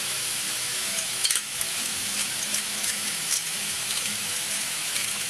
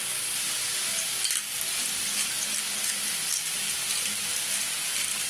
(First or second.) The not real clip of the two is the first